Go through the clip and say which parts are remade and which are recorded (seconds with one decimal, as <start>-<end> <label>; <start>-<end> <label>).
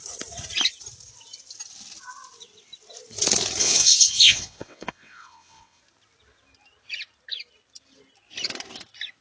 0.0-3.6 recorded; 3.6-5.8 remade; 5.8-9.2 recorded